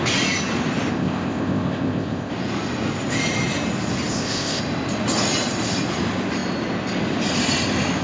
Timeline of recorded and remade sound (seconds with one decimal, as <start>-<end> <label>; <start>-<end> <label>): 0.0-0.9 recorded; 0.9-2.3 remade; 2.3-4.1 recorded; 4.1-4.6 remade; 4.6-8.0 recorded

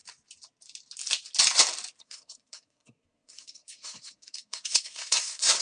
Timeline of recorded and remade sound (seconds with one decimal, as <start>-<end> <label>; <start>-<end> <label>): 0.0-2.0 recorded; 2.0-5.6 remade

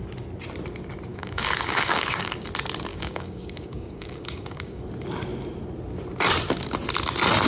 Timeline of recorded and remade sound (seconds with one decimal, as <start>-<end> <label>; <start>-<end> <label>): 0.0-1.1 recorded; 1.1-2.3 remade; 2.3-2.9 recorded; 2.9-4.8 remade; 4.8-7.5 recorded

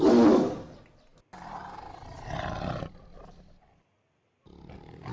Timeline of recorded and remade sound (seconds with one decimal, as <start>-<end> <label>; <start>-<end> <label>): 0.0-5.1 recorded

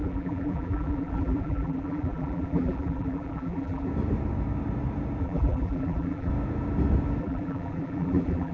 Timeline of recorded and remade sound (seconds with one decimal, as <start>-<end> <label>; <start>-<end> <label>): 0.0-3.9 remade; 3.9-5.2 recorded; 5.2-6.3 remade; 6.3-7.2 recorded; 7.2-8.5 remade

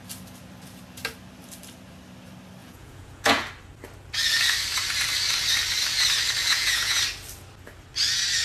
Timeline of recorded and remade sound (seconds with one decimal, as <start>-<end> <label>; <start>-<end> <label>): 0.0-2.6 recorded; 2.6-3.5 remade; 3.5-6.4 recorded; 6.4-7.0 remade; 7.0-8.4 recorded

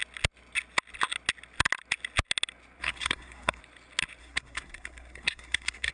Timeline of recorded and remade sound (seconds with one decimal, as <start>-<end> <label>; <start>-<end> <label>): 0.0-2.8 recorded; 2.8-3.6 remade; 3.6-4.2 recorded; 4.2-5.9 remade